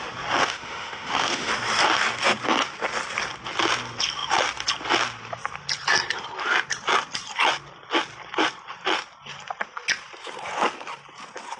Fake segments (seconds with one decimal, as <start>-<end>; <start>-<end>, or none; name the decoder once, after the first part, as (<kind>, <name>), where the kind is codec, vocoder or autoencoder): 0.4-1.5 (autoencoder, DAC-VAE)